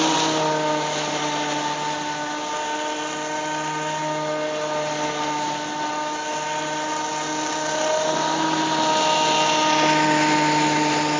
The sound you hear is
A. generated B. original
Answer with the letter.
B